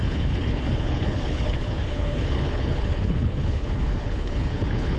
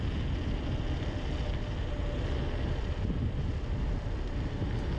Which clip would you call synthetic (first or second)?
first